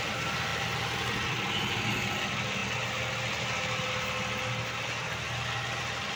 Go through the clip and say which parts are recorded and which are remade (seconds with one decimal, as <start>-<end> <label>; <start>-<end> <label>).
0.0-6.2 recorded